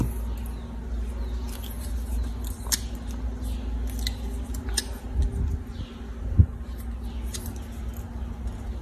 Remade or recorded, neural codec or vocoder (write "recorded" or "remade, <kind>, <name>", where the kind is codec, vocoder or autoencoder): recorded